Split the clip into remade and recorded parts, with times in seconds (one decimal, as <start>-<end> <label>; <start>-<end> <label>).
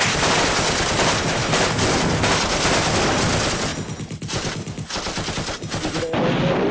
0.0-6.7 recorded